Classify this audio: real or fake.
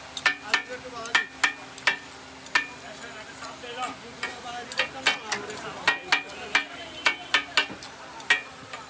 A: real